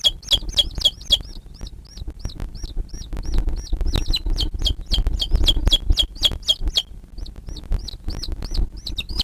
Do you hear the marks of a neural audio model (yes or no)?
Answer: no